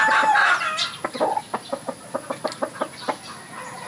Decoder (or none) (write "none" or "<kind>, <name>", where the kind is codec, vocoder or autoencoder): none